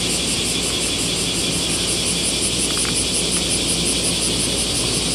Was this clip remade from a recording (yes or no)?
no